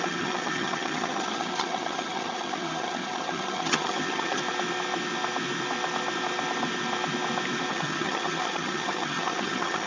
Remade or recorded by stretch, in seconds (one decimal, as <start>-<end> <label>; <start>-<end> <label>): 0.0-4.4 remade; 4.4-7.7 recorded; 7.7-9.9 remade

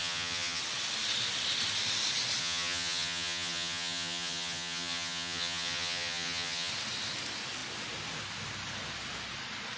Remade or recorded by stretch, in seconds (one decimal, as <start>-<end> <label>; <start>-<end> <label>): 0.0-0.6 remade; 0.6-2.4 recorded; 2.4-6.7 remade; 6.7-9.8 recorded

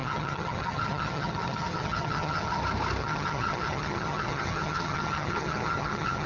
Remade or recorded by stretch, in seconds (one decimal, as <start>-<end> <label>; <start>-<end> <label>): 0.0-2.6 remade; 2.6-3.0 recorded; 3.0-6.3 remade

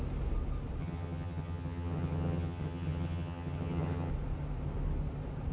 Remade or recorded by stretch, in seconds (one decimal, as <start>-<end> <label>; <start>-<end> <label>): 0.0-0.8 recorded; 0.8-4.1 remade; 4.1-5.5 recorded

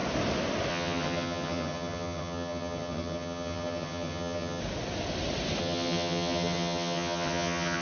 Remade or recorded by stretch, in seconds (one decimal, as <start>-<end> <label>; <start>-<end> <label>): 0.0-0.7 recorded; 0.7-4.6 remade; 4.6-5.6 recorded; 5.6-7.8 remade